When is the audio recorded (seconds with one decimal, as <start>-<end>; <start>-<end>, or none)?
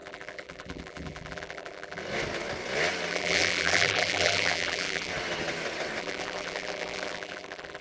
2.0-3.1; 5.1-6.0